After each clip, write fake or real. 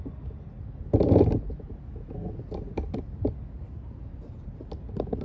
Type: real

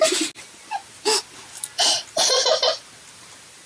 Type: real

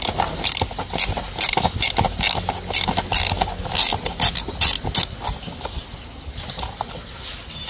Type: real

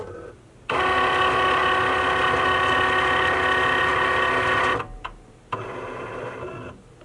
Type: real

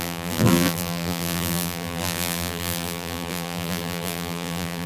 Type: fake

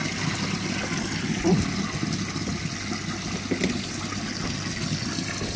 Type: real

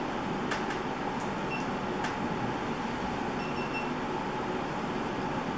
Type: real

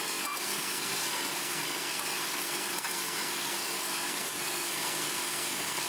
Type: fake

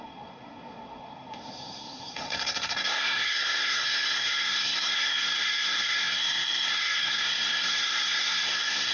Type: fake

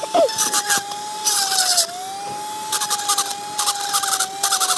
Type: real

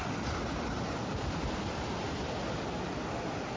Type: real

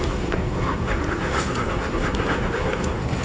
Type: fake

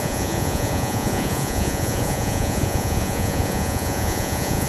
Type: fake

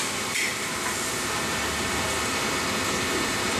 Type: real